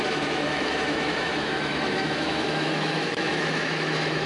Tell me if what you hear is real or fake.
fake